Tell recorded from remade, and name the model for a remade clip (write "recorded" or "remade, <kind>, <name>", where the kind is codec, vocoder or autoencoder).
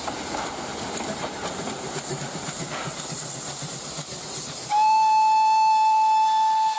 recorded